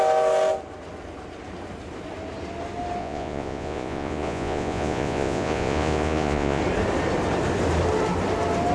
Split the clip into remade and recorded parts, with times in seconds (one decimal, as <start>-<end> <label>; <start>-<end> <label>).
0.0-3.0 recorded; 3.0-6.6 remade; 6.6-8.7 recorded